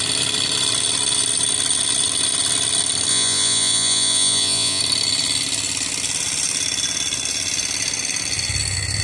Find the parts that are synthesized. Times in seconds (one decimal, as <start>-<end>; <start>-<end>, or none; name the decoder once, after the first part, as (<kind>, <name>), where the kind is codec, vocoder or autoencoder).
3.1-4.8 (vocoder, Vocos)